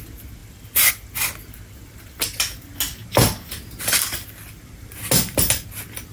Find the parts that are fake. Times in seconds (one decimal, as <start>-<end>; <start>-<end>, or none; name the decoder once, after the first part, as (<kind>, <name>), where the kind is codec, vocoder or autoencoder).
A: none